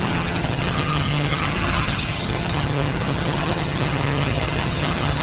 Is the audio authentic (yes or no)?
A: no